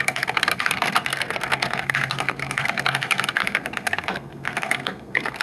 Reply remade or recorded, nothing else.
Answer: remade